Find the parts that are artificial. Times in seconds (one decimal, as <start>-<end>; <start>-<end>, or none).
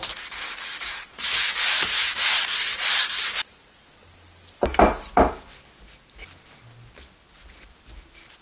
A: none